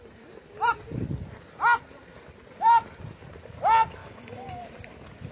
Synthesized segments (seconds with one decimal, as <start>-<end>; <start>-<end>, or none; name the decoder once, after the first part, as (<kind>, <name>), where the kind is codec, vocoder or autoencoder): 4.0-4.6 (codec, DAC)